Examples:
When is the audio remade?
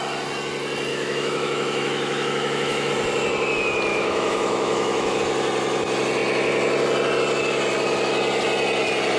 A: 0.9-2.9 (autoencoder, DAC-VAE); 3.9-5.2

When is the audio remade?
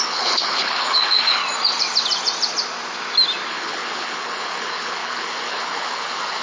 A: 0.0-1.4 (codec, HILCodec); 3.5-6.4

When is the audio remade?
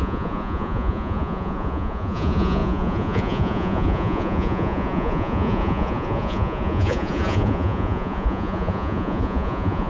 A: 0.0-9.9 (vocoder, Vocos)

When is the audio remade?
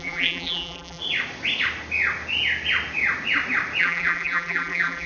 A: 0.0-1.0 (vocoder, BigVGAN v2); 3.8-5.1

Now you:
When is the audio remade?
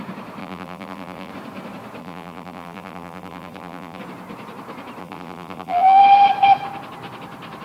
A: 0.4-1.3 (vocoder, BigVGAN v2); 2.0-4.0; 5.0-6.0